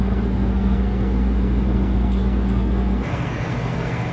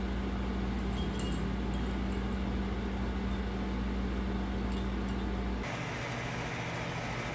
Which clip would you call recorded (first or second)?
second